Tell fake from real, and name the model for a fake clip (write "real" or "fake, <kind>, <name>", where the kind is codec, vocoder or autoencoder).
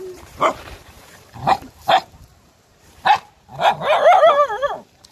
fake, vocoder, BigVGAN v2